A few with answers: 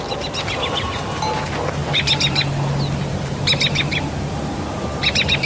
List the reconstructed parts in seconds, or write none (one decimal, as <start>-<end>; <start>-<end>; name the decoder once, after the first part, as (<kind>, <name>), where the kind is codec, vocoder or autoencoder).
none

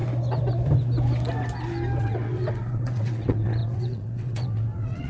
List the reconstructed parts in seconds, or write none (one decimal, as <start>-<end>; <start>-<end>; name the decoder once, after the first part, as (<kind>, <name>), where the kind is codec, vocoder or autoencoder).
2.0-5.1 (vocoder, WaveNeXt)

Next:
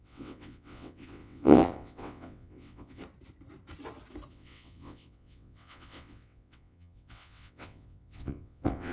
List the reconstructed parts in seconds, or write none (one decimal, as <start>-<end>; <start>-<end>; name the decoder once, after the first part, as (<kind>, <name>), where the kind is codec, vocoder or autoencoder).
0.0-3.0 (vocoder, WaveNeXt); 4.3-8.9